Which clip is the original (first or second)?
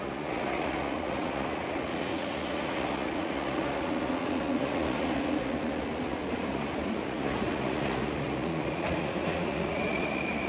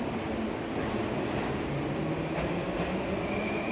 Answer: second